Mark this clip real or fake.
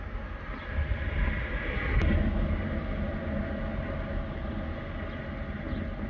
real